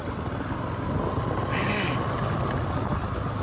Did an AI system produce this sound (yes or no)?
no